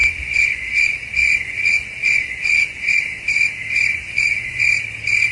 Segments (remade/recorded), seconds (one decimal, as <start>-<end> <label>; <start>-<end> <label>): 0.0-2.8 remade; 2.8-3.9 recorded; 3.9-4.6 remade; 4.6-5.3 recorded